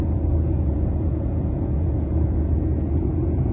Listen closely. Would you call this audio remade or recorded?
remade